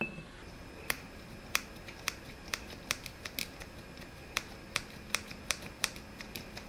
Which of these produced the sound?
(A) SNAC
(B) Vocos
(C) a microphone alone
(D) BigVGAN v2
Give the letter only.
C